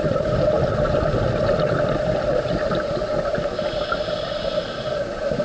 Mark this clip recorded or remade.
recorded